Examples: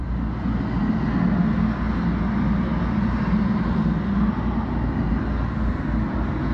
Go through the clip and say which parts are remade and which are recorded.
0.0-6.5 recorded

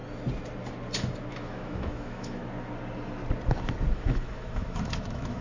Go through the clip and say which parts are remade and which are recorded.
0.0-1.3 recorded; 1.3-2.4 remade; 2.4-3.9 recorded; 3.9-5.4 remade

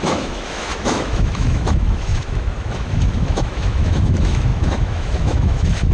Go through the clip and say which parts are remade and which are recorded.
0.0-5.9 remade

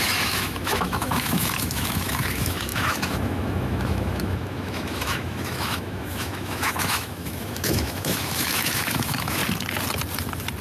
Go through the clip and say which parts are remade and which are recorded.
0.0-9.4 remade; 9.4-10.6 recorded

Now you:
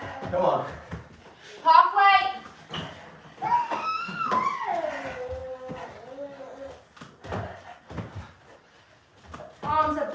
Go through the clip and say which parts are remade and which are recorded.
0.0-3.6 recorded; 3.6-4.3 remade; 4.3-10.1 recorded